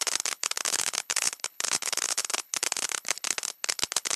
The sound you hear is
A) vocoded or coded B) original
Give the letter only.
A